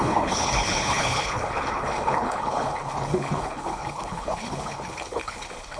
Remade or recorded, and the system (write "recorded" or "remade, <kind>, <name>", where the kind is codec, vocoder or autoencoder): remade, codec, HILCodec